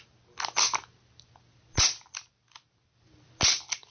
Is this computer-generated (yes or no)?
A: no